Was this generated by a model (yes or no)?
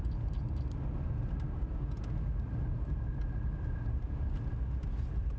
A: no